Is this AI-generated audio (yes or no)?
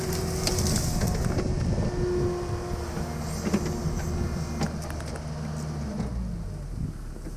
no